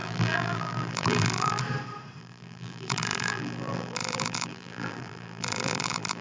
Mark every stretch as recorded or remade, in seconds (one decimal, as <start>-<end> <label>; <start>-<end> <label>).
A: 0.0-1.6 remade; 1.6-2.2 recorded; 2.2-6.2 remade